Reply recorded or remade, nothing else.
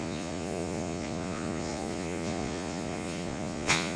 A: remade